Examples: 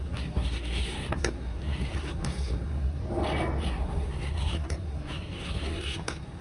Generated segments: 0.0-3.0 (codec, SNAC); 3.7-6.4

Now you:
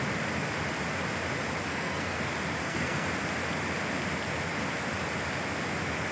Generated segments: 1.7-2.2 (codec, SNAC); 2.6-3.1

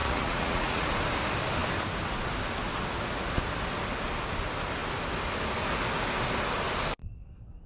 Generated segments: 0.0-0.9 (vocoder, Vocos)

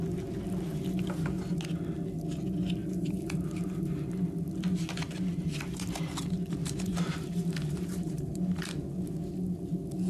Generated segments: 2.8-4.1 (vocoder, BigVGAN v2); 6.6-8.9

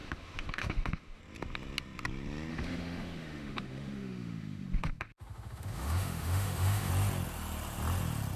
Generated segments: 0.0-1.2 (autoencoder, DAC-VAE); 2.5-6.9